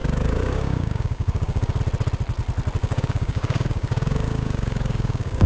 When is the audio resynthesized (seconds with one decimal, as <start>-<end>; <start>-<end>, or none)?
0.0-1.8; 2.8-5.5